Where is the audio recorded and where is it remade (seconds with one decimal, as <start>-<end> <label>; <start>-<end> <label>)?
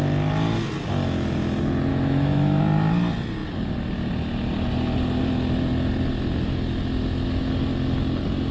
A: 0.0-1.9 recorded; 1.9-2.6 remade; 2.6-8.5 recorded